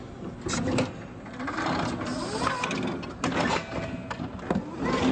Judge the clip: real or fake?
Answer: real